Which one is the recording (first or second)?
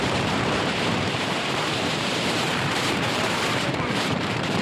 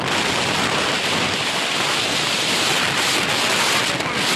second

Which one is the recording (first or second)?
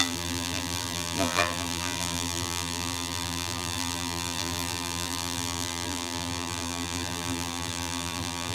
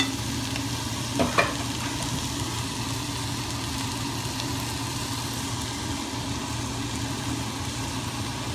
second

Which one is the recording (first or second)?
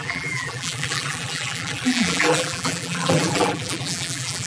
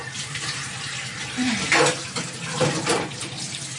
second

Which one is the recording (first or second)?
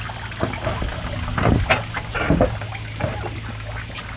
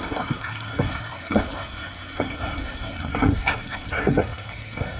first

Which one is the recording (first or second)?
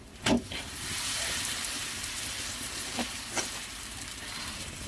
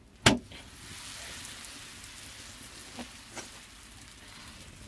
second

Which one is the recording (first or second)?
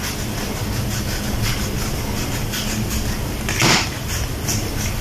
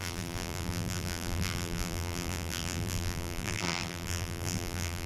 first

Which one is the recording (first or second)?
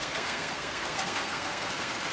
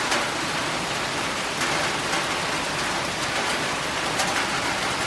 second